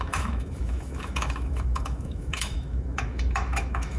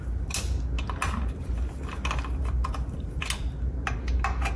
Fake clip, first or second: first